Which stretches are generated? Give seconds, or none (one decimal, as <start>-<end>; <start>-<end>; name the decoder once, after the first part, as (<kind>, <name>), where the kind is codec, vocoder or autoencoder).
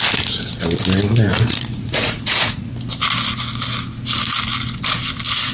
1.3-2.7 (vocoder, Vocos)